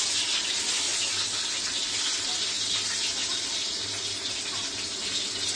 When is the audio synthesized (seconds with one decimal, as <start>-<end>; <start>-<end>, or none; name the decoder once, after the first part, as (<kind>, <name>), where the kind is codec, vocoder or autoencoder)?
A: none